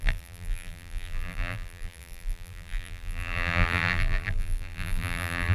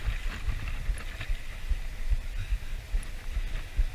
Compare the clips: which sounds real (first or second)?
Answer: second